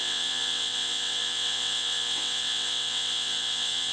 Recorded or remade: remade